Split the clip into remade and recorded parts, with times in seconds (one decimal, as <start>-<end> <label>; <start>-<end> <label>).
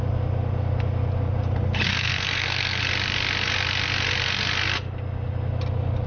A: 0.0-1.9 recorded; 1.9-2.8 remade; 2.8-6.1 recorded